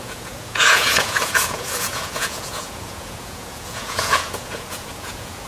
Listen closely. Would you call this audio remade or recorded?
remade